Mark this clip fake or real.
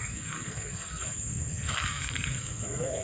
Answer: fake